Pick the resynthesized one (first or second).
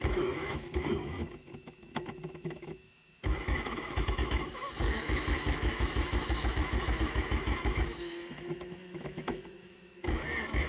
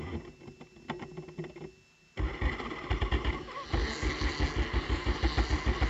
first